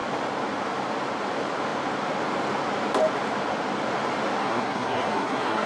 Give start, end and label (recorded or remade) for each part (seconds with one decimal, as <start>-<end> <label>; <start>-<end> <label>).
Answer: 0.0-4.4 recorded; 4.4-5.7 remade